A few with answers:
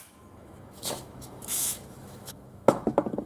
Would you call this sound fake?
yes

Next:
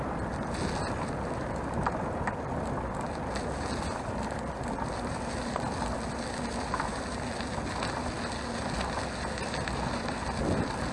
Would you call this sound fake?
no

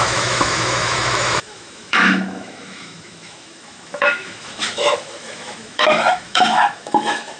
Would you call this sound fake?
yes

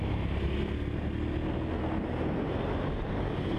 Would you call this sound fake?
no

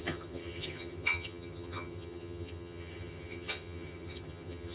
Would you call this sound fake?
yes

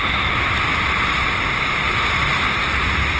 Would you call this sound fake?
no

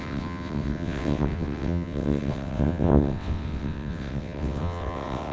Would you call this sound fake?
yes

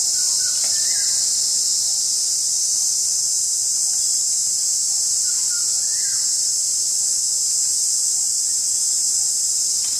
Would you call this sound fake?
no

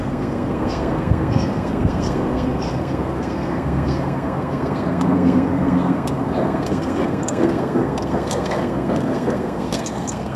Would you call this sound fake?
yes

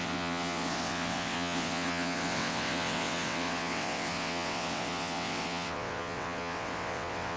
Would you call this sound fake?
yes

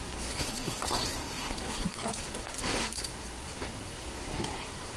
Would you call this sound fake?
yes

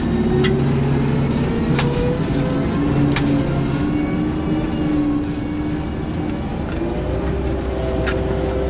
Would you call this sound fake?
no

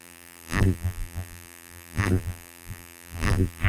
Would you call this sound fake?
yes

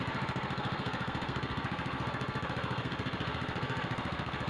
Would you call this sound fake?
yes